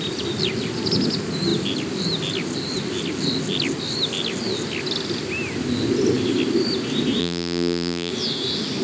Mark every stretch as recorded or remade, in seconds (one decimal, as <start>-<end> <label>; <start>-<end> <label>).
0.0-7.2 recorded; 7.2-8.1 remade; 8.1-8.8 recorded